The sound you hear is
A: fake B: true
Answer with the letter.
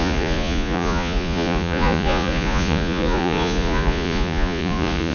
A